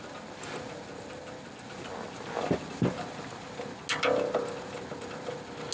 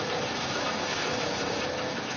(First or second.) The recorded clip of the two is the first